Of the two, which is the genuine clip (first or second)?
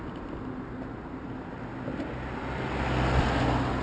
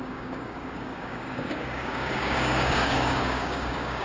first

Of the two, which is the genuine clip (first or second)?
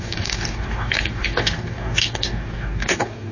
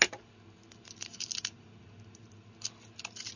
second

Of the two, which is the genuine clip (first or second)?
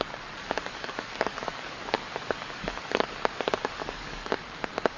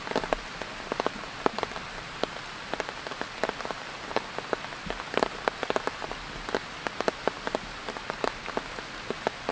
second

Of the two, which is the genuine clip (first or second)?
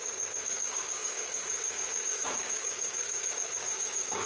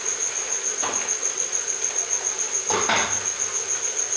second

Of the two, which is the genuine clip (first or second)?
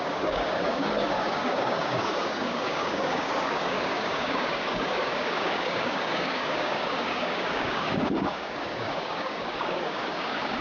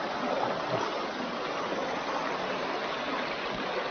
second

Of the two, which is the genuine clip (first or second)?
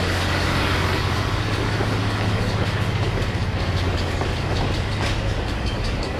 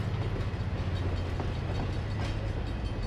second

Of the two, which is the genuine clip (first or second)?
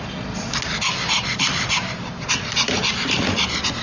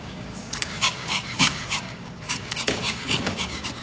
first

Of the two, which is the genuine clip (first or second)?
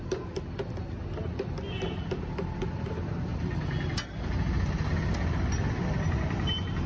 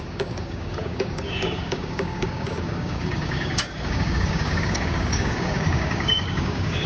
first